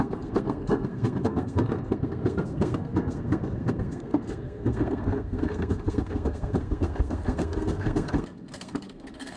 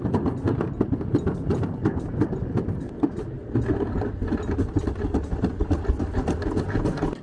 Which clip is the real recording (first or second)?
second